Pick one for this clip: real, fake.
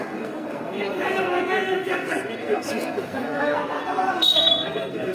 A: fake